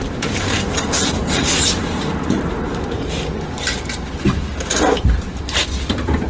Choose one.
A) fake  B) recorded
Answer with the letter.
A